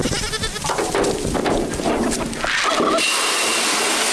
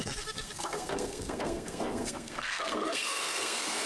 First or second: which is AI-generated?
second